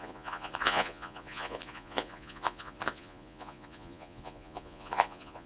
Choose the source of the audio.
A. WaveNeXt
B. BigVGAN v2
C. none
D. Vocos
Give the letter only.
D